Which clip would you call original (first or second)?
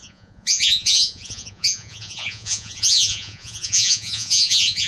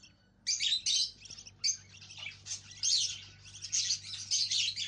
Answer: second